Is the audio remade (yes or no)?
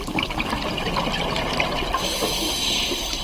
no